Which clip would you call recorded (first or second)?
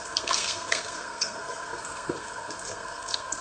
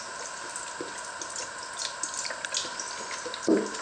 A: second